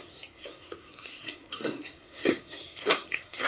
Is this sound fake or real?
fake